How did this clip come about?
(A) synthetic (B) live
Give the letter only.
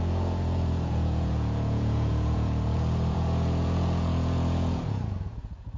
A